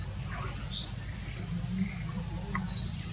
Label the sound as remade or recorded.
recorded